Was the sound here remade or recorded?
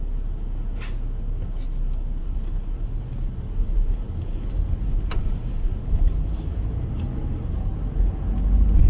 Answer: recorded